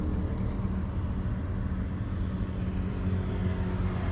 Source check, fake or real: real